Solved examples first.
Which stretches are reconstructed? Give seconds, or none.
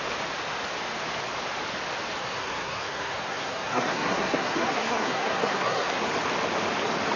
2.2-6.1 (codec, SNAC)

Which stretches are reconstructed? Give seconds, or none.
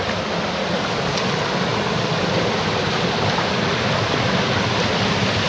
none